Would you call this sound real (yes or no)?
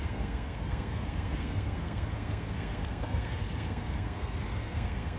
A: no